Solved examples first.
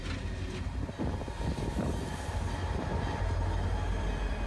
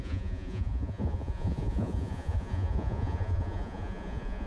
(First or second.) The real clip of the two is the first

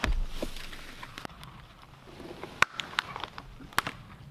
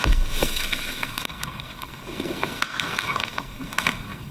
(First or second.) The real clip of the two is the first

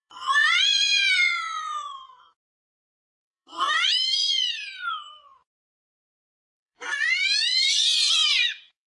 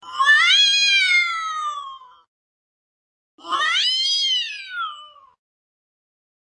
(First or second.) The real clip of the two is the second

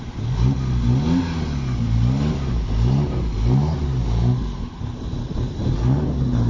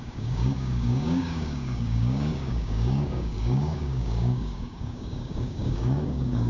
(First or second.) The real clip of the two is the first